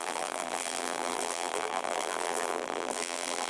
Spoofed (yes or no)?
yes